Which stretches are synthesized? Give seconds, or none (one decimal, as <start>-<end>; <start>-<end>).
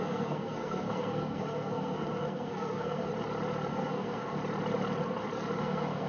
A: 0.0-3.1; 3.7-4.4; 5.6-6.1